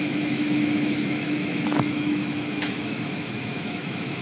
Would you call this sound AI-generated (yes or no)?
yes